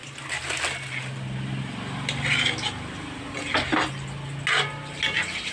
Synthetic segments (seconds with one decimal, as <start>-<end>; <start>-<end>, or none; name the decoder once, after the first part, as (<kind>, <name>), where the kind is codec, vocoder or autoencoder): none

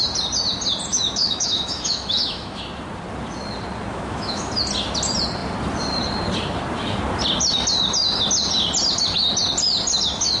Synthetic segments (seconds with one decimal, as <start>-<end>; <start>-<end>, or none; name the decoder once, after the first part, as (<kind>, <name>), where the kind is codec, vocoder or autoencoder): 0.9-2.6 (autoencoder, DAC-VAE); 3.9-4.5